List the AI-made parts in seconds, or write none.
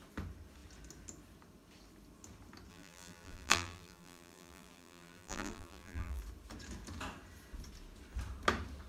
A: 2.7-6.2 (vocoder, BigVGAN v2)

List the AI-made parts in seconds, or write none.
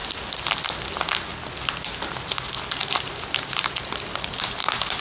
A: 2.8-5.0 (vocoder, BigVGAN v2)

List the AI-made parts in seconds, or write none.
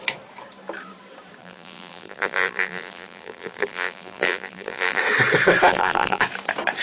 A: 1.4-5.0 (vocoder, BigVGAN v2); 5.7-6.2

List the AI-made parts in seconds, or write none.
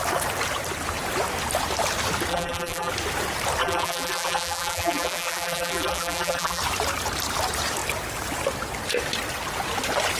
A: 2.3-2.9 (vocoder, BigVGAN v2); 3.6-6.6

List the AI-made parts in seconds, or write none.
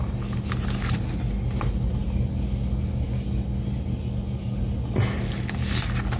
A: none